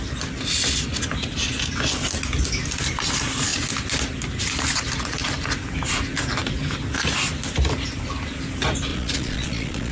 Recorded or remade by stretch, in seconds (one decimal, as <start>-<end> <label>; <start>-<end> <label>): 0.0-8.9 recorded; 8.9-9.9 remade